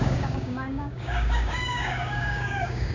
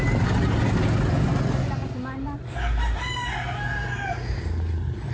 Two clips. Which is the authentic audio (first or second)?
second